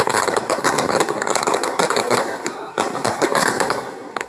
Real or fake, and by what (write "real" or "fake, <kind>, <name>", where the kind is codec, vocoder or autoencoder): fake, codec, SNAC